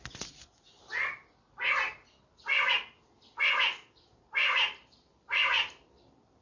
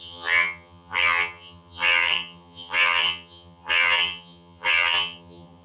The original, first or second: first